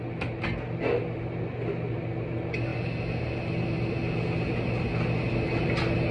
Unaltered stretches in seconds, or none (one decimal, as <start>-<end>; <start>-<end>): 0.0-6.1